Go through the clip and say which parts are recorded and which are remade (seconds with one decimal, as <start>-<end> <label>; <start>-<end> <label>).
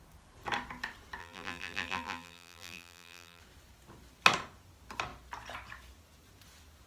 0.0-1.2 recorded; 1.2-3.4 remade; 3.4-6.9 recorded